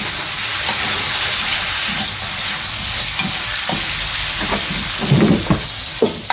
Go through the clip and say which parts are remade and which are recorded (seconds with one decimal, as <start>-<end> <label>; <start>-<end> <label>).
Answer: 0.0-6.3 recorded